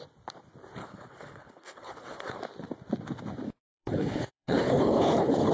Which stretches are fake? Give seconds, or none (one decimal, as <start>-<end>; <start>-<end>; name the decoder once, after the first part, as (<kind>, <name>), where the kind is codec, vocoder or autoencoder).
0.8-2.4 (codec, HILCodec); 3.6-5.5